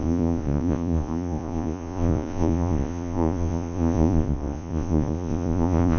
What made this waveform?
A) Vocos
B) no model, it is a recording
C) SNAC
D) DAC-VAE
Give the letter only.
A